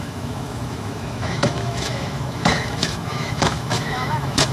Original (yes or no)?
no